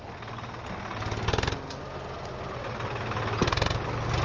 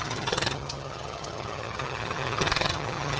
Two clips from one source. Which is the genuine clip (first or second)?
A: first